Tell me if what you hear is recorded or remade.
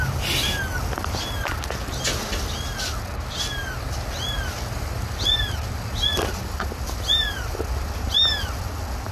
recorded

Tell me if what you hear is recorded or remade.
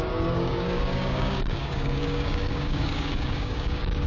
remade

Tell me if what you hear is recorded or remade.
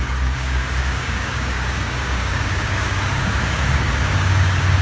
remade